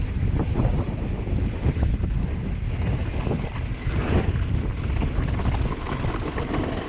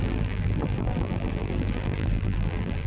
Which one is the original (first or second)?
first